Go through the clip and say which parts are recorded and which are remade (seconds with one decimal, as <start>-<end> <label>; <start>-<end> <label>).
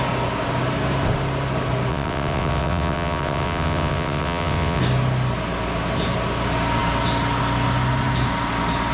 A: 0.0-1.9 recorded; 1.9-4.8 remade; 4.8-8.9 recorded